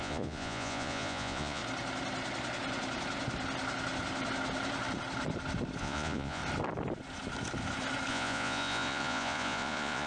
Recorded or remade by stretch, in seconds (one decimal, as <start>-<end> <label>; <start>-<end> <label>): 0.0-1.6 remade; 1.6-5.8 recorded; 5.8-6.4 remade; 6.4-8.1 recorded; 8.1-10.1 remade